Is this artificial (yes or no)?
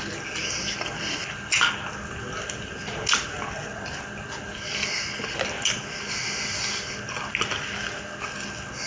no